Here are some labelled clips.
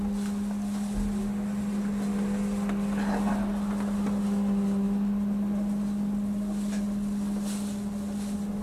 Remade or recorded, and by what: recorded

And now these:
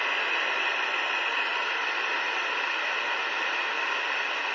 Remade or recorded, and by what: recorded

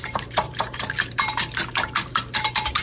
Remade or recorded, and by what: remade, vocoder, BigVGAN v2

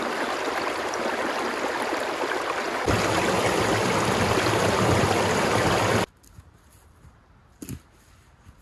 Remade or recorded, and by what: recorded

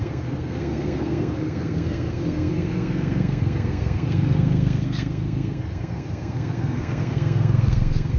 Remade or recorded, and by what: remade, codec, SNAC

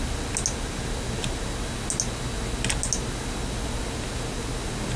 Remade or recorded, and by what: recorded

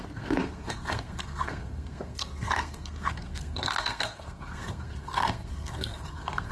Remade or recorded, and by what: remade, codec, SNAC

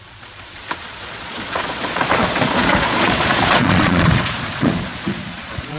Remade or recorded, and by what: remade, vocoder, Vocos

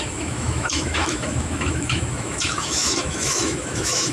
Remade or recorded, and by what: remade, autoencoder, DAC-VAE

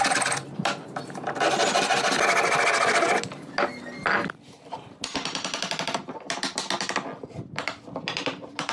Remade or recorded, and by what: recorded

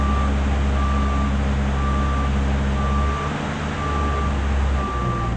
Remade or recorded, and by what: recorded